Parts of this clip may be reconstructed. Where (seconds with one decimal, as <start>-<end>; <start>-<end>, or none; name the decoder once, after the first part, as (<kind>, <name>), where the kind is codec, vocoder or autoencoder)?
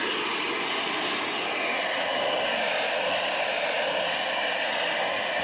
none